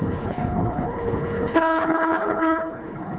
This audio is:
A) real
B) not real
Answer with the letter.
B